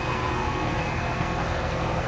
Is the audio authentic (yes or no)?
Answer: no